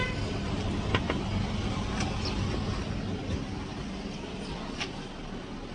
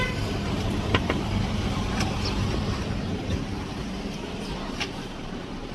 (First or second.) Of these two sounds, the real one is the first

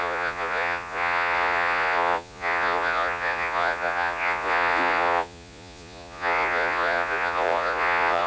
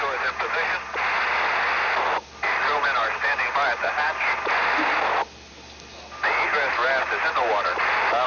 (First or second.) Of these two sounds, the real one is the second